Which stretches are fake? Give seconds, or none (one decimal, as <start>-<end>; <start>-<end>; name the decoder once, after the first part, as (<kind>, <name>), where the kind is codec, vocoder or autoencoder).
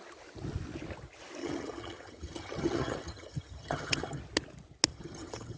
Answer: 1.4-4.2 (vocoder, HiFi-GAN); 4.9-5.6